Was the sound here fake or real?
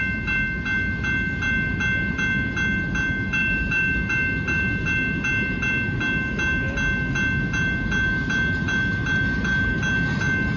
real